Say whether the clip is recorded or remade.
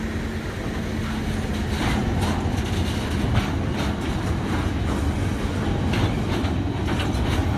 recorded